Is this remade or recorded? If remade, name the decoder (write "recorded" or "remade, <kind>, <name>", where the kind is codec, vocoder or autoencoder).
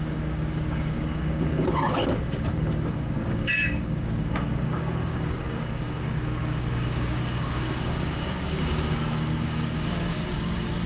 remade, codec, DAC